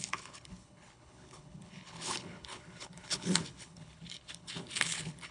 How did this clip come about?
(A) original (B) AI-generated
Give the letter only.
B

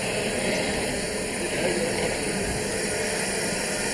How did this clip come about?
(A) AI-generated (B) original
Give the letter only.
B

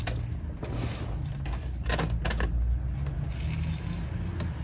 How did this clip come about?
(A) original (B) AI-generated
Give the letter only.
A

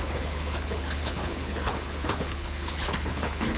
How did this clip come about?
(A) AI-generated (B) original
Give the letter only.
A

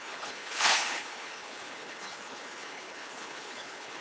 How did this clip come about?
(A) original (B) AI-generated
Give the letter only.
B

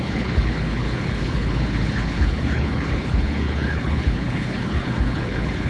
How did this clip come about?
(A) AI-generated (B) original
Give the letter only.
A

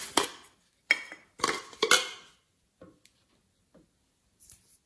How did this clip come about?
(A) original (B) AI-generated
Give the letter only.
A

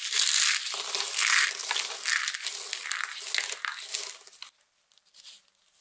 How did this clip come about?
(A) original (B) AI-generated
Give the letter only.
A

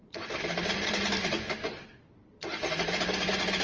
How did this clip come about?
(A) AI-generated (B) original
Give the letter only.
B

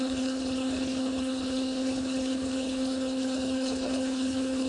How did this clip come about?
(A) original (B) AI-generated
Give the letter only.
B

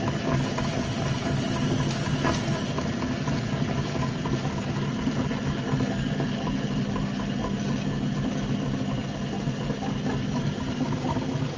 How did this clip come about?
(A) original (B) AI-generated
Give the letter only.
A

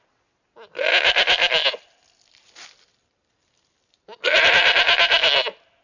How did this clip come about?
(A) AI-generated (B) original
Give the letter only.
B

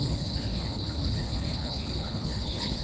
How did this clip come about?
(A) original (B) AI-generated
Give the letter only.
B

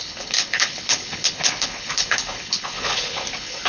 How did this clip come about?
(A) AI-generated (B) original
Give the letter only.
A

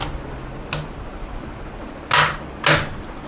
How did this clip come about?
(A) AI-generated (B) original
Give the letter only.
B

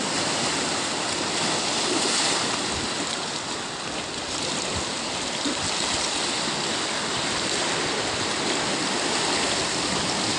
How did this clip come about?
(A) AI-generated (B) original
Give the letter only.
B